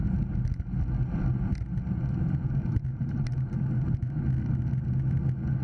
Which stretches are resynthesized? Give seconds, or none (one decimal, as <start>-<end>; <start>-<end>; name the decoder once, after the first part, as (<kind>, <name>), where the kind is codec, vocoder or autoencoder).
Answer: 2.6-4.1 (vocoder, BigVGAN v2)